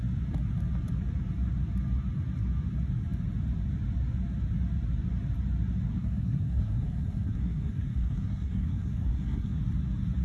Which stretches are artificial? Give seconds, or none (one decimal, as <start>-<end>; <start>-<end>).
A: 5.9-9.6